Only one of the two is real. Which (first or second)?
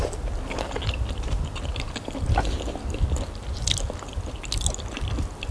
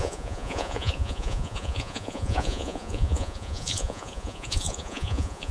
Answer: first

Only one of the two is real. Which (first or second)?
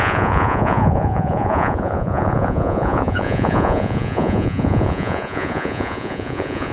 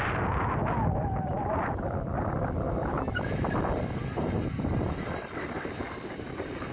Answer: second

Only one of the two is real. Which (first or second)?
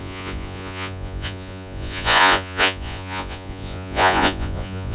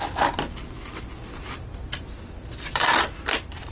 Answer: second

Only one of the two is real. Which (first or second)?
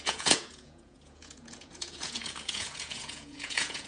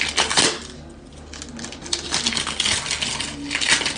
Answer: second